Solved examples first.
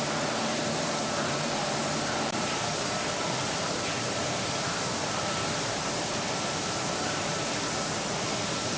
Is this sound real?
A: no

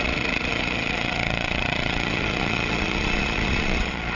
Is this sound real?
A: no